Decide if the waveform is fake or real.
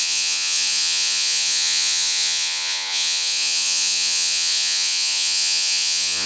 fake